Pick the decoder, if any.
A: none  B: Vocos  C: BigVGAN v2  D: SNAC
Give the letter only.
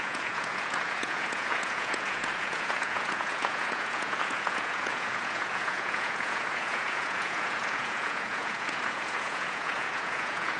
B